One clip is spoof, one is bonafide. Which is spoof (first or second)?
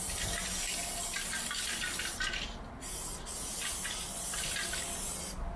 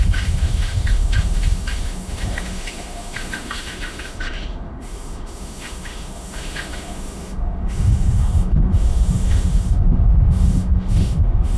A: second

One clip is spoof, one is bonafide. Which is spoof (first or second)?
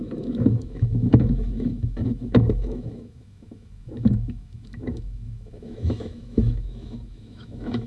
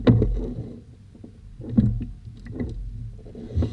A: first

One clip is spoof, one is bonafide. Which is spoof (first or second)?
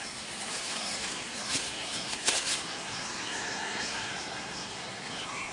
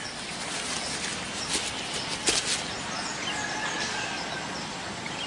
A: first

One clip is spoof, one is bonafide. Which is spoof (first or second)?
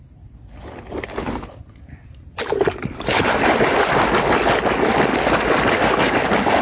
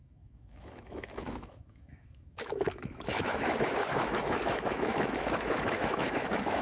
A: second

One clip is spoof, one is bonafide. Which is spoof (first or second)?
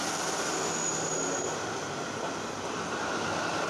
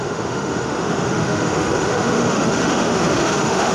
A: second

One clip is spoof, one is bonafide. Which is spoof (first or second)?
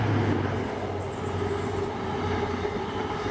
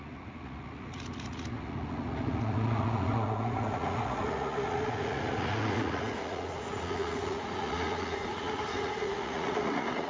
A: second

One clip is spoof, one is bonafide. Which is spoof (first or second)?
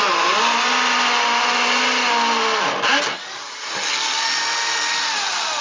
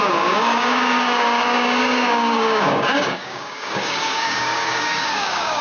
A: second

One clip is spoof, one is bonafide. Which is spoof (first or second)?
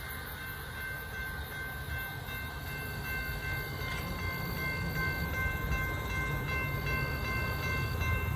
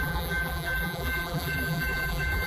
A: second